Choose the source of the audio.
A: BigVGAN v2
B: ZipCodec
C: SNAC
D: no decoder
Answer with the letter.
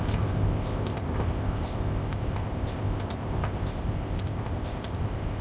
B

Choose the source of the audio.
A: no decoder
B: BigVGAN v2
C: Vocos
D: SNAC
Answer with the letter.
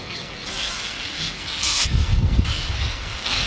D